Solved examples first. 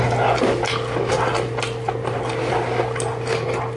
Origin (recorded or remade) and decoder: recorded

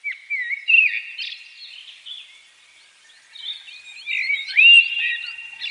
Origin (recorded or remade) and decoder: recorded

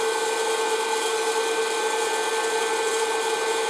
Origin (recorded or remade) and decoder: recorded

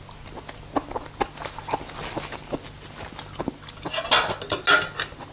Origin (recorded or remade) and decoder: recorded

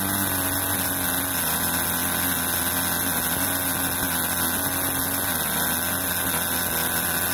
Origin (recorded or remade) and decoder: recorded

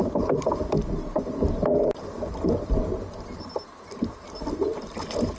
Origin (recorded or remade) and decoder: recorded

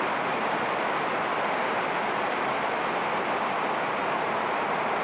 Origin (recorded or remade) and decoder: recorded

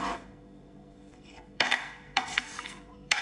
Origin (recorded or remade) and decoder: remade, codec, SNAC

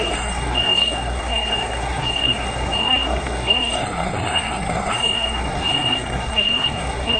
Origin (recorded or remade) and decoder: remade, codec, SNAC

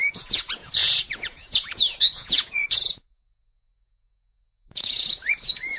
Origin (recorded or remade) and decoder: remade, vocoder, Vocos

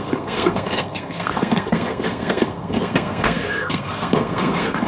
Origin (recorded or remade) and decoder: remade, codec, SNAC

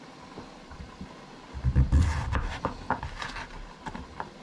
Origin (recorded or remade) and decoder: recorded